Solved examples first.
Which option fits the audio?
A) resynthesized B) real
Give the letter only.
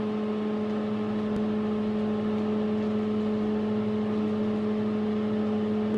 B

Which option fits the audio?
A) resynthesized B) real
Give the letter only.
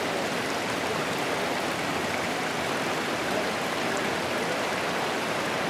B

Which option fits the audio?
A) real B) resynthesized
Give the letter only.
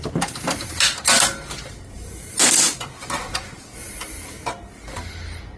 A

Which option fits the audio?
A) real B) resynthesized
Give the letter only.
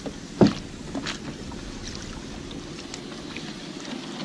A